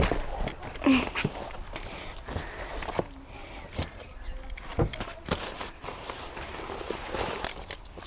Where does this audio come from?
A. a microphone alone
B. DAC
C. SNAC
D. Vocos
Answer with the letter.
A